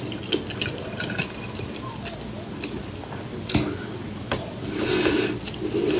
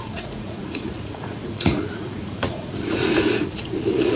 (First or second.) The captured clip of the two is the first